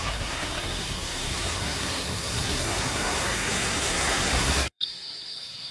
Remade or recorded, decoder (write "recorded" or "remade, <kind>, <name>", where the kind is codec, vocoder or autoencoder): remade, codec, SNAC